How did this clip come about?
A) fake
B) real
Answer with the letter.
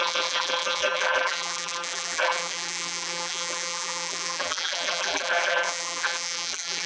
A